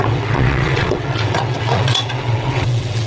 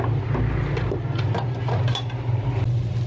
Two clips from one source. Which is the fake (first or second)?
first